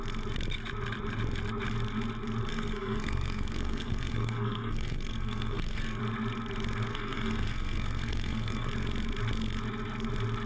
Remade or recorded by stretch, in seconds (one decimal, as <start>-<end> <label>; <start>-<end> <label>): 0.0-2.5 recorded; 2.5-6.0 remade; 6.0-6.9 recorded; 6.9-8.7 remade; 8.7-10.5 recorded